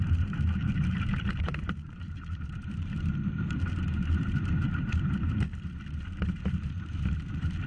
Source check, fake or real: fake